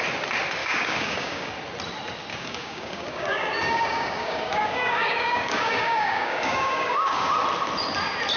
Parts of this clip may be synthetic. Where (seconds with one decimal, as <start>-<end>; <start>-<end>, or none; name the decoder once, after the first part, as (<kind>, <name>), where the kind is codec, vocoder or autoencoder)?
0.6-1.5 (codec, DAC); 2.3-7.3